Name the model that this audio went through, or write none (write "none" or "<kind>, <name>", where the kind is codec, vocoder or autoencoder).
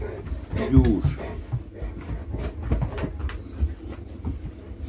none